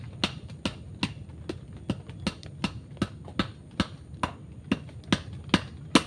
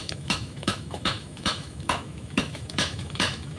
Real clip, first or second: first